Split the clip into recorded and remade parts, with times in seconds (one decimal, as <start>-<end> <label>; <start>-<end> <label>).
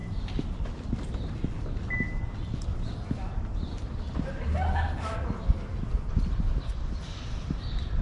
0.0-8.0 recorded